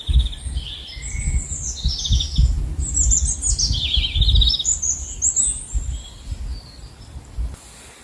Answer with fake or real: real